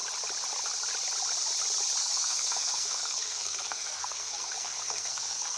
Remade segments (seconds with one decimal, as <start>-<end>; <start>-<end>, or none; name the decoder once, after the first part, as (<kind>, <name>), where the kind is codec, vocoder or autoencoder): 2.0-5.6 (codec, SNAC)